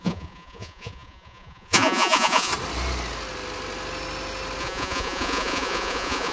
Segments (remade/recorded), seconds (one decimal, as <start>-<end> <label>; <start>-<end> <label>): 0.0-2.5 remade; 2.5-4.6 recorded; 4.6-6.3 remade